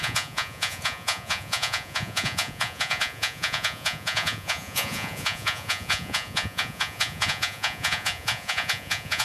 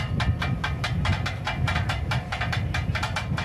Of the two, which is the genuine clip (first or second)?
second